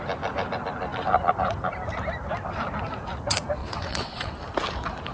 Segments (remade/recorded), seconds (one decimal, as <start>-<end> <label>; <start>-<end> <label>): 0.0-3.6 recorded; 3.6-4.3 remade; 4.3-5.1 recorded